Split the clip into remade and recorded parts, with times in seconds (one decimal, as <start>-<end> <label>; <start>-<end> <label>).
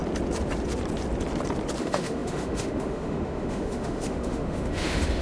0.0-1.8 recorded; 1.8-5.2 remade